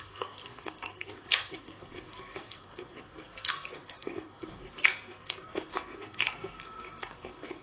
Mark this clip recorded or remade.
remade